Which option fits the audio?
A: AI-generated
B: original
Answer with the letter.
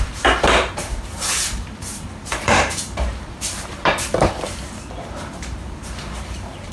A